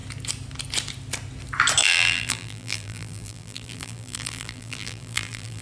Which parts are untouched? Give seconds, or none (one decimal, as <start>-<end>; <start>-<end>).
0.0-1.8